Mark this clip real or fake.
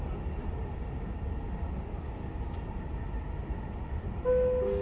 real